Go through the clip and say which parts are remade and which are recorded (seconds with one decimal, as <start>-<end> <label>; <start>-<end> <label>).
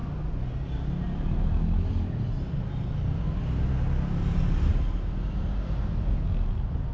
0.0-6.9 recorded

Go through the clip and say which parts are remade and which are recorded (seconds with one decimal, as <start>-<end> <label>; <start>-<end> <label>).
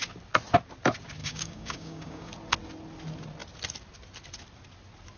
0.0-1.2 recorded; 1.2-2.3 remade; 2.3-5.2 recorded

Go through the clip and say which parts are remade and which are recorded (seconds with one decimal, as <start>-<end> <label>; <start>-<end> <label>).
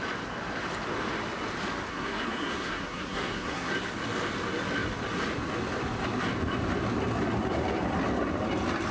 0.0-1.9 recorded; 1.9-3.7 remade; 3.7-8.9 recorded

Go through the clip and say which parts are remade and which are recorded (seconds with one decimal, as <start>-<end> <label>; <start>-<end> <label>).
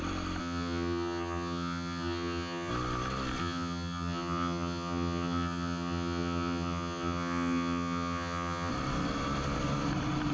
0.0-0.4 recorded; 0.4-2.7 remade; 2.7-3.4 recorded; 3.4-8.7 remade; 8.7-10.3 recorded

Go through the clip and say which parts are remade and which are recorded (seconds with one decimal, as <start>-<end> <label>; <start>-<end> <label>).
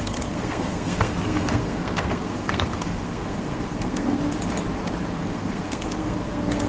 0.0-4.2 remade; 4.2-5.2 recorded; 5.2-6.7 remade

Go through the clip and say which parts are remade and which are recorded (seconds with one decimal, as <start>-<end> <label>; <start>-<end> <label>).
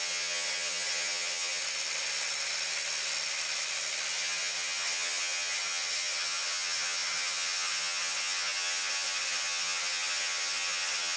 0.0-1.6 remade; 1.6-4.1 recorded; 4.1-11.2 remade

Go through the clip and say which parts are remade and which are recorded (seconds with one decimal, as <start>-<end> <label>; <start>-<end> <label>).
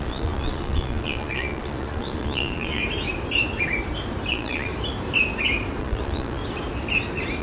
0.0-2.8 remade; 2.8-4.3 recorded; 4.3-4.7 remade; 4.7-5.8 recorded; 5.8-6.4 remade; 6.4-7.4 recorded